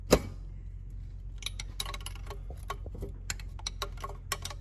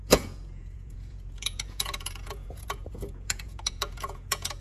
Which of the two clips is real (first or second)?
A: first